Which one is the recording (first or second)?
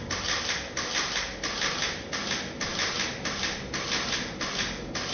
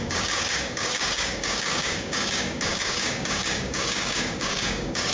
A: first